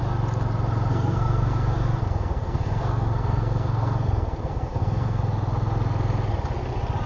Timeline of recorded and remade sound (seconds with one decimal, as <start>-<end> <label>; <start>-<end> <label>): 0.0-0.9 recorded; 0.9-5.2 remade; 5.2-7.1 recorded